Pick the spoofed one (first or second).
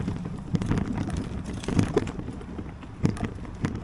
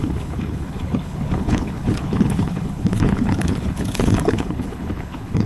second